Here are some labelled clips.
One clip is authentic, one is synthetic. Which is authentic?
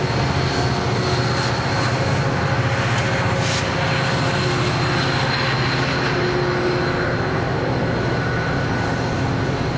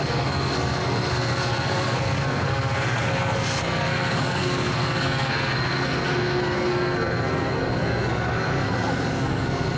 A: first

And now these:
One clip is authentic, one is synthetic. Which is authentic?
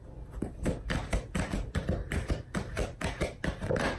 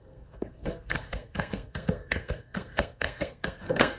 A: first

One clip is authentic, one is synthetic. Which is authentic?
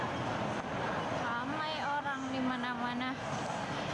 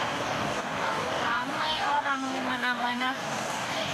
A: first